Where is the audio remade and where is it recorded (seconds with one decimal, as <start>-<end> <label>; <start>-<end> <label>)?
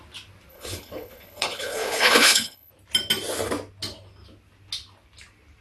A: 0.0-0.5 recorded; 0.5-2.7 remade; 2.7-5.6 recorded